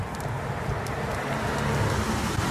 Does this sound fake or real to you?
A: real